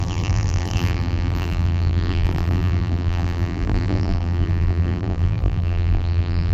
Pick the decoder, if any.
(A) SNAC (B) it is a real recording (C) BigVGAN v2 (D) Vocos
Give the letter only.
C